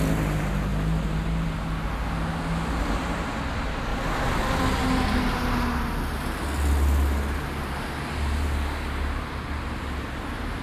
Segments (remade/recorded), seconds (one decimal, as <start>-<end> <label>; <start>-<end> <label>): 0.0-10.6 recorded